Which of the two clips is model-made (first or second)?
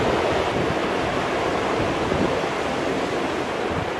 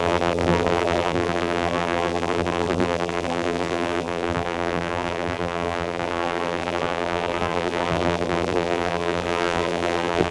second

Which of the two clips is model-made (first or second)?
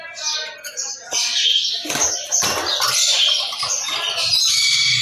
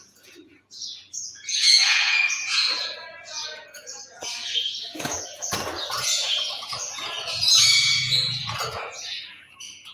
second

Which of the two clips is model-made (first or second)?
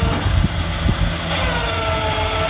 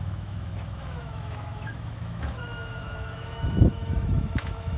second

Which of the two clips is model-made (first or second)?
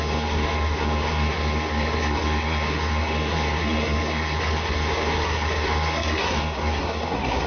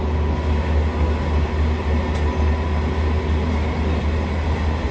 first